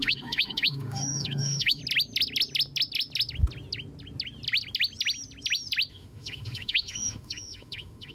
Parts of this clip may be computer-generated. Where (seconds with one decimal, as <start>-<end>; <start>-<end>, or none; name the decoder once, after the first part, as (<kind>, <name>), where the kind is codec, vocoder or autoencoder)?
0.0-1.8 (autoencoder, DAC-VAE); 5.9-8.1